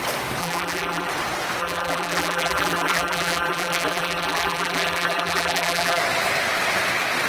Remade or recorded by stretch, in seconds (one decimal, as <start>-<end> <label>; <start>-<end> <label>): 0.0-0.4 recorded; 0.4-1.1 remade; 1.1-1.6 recorded; 1.6-6.0 remade; 6.0-7.3 recorded